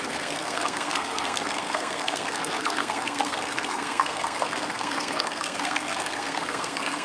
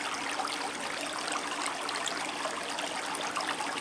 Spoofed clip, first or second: first